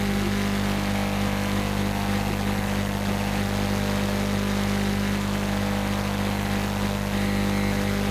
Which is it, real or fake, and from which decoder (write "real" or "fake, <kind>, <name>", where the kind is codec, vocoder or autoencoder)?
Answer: real